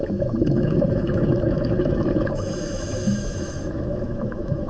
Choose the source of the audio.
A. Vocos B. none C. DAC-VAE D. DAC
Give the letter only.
C